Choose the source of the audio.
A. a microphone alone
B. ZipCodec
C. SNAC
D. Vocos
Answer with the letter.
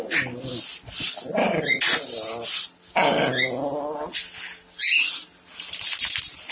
A